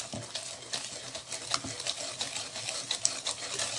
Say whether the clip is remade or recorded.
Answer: recorded